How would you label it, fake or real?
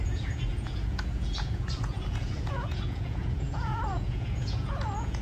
fake